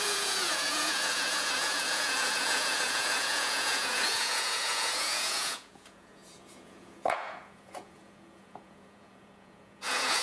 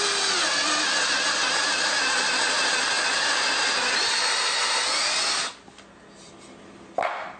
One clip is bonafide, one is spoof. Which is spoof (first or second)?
first